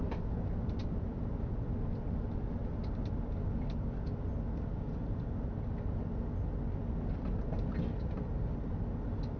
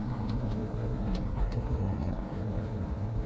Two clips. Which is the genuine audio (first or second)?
first